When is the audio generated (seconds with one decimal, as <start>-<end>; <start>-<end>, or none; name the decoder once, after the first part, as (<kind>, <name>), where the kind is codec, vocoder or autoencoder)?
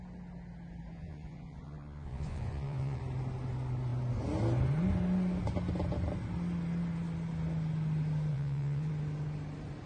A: 0.9-3.0 (vocoder, Vocos); 8.3-8.9